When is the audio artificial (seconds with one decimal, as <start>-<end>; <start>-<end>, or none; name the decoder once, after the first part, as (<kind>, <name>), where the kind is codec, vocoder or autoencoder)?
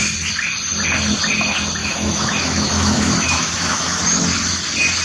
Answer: 1.8-4.0 (autoencoder, DAC-VAE)